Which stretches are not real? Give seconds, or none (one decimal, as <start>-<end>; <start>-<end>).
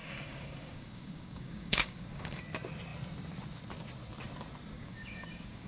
0.0-2.4; 4.7-5.7